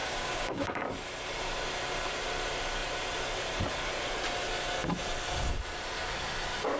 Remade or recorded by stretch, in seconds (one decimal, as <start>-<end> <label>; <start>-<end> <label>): 0.0-0.8 remade; 0.8-6.8 recorded